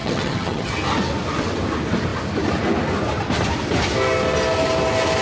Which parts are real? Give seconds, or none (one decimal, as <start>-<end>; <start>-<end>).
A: 0.7-5.2